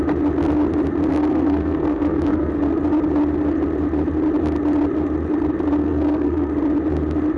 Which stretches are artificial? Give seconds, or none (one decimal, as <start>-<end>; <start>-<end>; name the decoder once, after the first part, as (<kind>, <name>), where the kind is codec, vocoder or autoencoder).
1.1-2.5 (codec, SNAC); 5.8-6.5